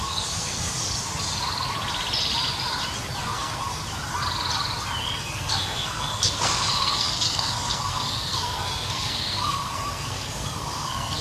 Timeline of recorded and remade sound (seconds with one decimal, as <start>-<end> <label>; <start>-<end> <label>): 0.0-0.8 remade; 0.8-3.2 recorded; 3.2-3.8 remade; 3.8-5.0 recorded; 5.0-11.2 remade